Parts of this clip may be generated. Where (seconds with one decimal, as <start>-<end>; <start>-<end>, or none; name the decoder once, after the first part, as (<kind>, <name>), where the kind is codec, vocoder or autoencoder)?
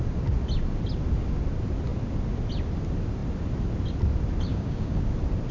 4.5-5.1 (codec, DAC)